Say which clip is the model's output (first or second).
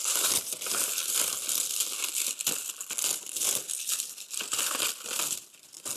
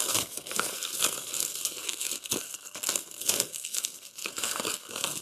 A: second